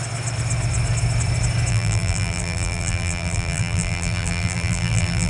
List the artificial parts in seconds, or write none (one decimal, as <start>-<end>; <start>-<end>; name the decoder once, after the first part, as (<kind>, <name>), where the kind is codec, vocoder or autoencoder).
1.7-5.3 (vocoder, BigVGAN v2)